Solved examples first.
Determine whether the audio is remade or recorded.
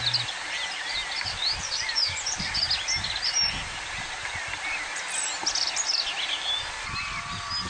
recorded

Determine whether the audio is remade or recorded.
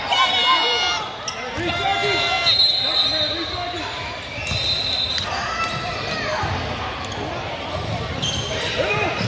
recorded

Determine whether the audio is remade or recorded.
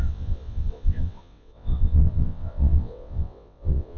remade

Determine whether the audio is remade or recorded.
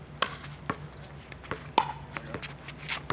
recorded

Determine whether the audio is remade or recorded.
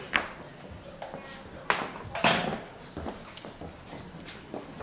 recorded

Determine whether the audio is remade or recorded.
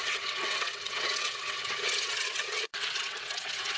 remade